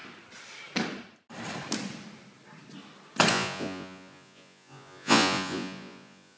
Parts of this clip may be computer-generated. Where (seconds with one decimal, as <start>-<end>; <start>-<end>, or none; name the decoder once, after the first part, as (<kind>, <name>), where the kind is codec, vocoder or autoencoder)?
3.3-6.4 (vocoder, Vocos)